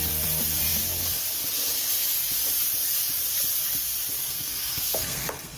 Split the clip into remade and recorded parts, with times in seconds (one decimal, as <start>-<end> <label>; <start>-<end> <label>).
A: 0.0-4.2 recorded; 4.2-5.6 remade